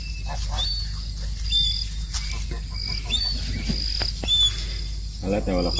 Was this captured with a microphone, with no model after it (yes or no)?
yes